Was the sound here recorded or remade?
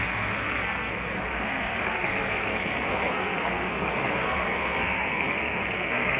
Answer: remade